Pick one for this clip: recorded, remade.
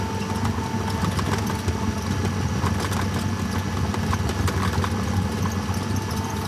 recorded